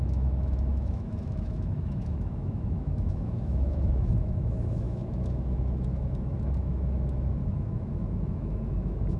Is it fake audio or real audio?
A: fake